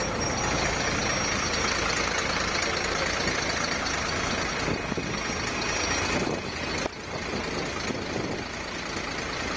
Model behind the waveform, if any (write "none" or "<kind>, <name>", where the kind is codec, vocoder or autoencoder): none